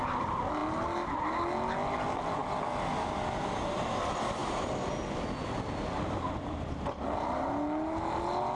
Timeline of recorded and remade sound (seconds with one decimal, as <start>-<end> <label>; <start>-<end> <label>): 0.0-8.6 recorded